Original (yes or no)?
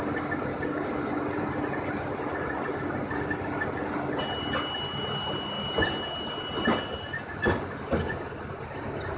yes